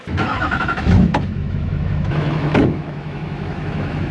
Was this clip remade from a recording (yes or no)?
yes